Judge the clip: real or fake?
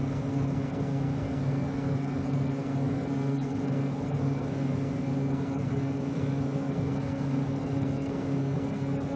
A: fake